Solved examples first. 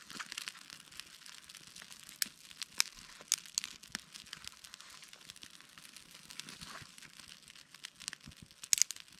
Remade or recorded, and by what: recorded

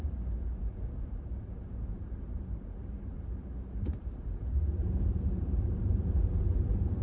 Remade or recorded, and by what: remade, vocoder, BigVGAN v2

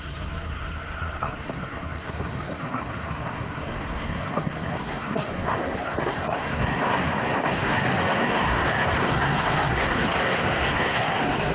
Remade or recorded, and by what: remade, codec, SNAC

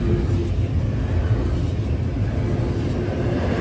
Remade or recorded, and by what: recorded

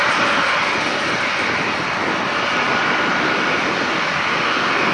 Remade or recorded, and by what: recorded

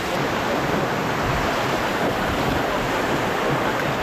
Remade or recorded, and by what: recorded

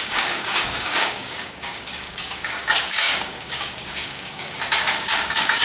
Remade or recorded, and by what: remade, codec, DAC